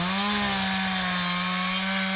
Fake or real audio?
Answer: real